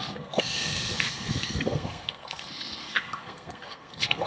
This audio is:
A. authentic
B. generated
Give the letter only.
B